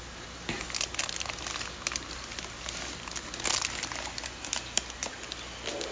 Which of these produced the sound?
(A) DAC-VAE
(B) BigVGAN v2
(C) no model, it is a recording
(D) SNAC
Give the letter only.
C